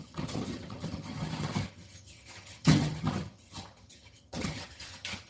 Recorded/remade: remade